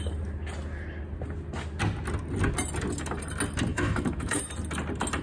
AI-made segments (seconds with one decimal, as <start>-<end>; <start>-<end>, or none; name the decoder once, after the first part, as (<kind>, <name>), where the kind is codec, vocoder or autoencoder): 3.7-4.4 (autoencoder, DAC-VAE)